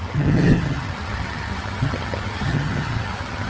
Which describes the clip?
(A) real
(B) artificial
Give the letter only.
B